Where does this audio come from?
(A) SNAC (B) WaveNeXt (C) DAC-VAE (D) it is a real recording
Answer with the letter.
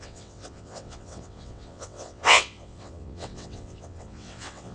B